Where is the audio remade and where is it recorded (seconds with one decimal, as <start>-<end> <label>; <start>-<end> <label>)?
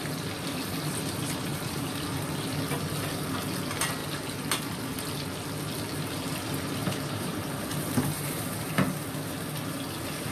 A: 0.0-1.5 recorded; 1.5-2.0 remade; 2.0-6.8 recorded; 6.8-8.7 remade; 8.7-10.3 recorded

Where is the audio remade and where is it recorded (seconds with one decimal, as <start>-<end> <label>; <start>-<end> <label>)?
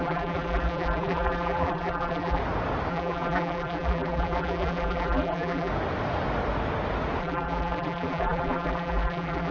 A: 0.0-2.4 remade; 2.4-2.9 recorded; 2.9-5.7 remade; 5.7-7.2 recorded; 7.2-9.5 remade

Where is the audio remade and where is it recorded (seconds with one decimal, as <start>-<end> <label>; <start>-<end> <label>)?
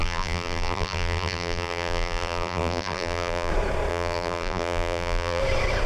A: 0.0-3.5 remade; 3.5-3.9 recorded; 3.9-5.4 remade; 5.4-5.9 recorded